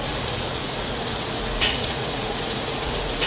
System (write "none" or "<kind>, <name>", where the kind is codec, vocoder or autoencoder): vocoder, Vocos